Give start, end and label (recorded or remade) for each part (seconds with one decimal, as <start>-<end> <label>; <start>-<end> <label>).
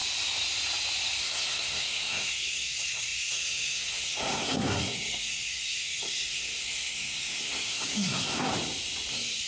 0.0-1.2 recorded; 1.2-8.5 remade; 8.5-9.1 recorded; 9.1-9.5 remade